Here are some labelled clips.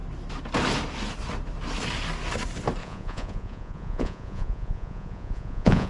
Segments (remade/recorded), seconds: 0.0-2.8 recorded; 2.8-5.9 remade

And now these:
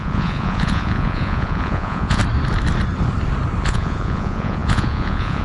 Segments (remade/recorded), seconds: 0.0-2.2 remade; 2.2-3.6 recorded; 3.6-5.4 remade

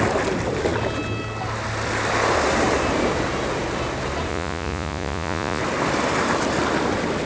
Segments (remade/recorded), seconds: 0.0-4.3 recorded; 4.3-5.6 remade; 5.6-7.3 recorded

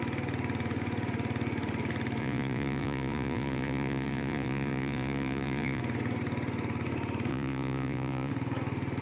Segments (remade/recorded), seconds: 0.0-2.2 recorded; 2.2-5.8 remade; 5.8-7.3 recorded; 7.3-8.3 remade; 8.3-9.0 recorded

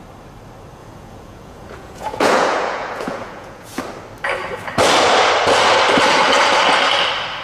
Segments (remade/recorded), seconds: 0.0-0.8 recorded; 0.8-3.8 remade; 3.8-7.4 recorded

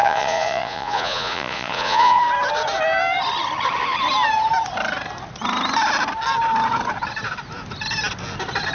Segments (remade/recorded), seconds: 0.0-2.2 remade; 2.2-8.7 recorded